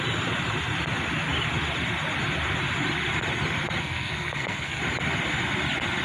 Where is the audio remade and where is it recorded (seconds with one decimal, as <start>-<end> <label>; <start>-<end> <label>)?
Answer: 0.0-3.8 recorded; 3.8-4.8 remade; 4.8-6.0 recorded